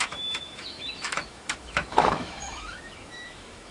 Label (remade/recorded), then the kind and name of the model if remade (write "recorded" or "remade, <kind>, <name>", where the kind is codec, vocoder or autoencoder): remade, autoencoder, DAC-VAE